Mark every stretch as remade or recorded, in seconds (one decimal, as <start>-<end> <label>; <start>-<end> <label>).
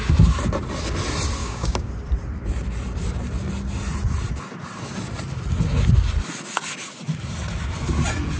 0.0-1.4 recorded; 1.4-1.9 remade; 1.9-8.4 recorded